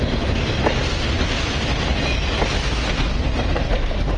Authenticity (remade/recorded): recorded